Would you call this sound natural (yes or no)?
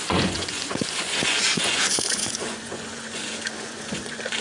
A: no